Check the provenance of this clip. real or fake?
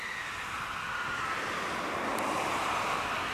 real